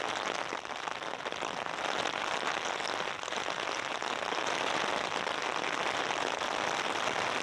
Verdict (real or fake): real